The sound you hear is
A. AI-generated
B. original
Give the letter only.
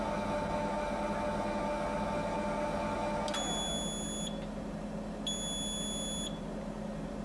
B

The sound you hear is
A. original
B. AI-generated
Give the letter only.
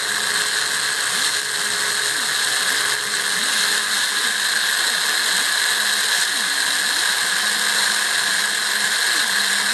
A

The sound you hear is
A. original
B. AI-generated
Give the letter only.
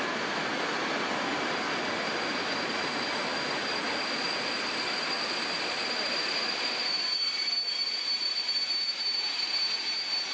B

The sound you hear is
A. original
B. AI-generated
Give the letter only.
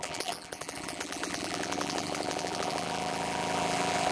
B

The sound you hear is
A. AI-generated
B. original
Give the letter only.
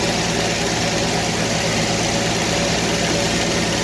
B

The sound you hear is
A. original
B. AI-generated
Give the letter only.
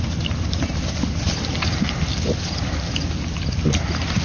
A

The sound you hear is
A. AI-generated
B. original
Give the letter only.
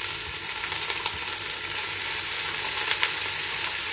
B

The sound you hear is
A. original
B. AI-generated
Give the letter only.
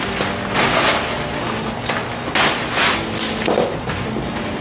A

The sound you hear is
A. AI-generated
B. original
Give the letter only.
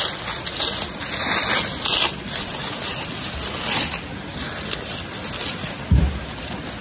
B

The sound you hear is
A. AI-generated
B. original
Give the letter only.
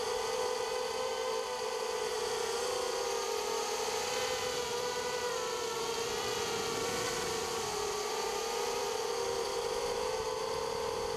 A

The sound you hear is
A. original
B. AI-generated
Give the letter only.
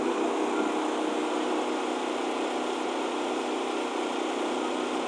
A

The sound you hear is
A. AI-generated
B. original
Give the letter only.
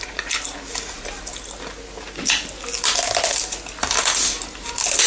B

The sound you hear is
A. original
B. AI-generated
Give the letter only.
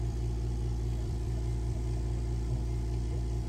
B